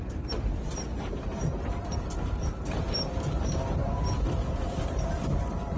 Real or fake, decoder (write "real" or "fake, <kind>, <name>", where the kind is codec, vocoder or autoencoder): fake, vocoder, BigVGAN v2